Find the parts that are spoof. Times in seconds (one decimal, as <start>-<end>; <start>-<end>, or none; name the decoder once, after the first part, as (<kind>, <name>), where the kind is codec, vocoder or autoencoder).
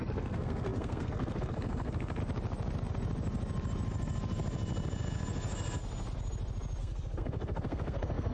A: 0.0-2.2 (codec, SNAC); 6.8-8.3